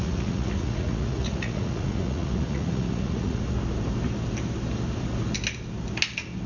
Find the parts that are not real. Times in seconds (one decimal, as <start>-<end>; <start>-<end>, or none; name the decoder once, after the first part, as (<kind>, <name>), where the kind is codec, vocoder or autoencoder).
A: 0.0-3.4 (vocoder, Vocos)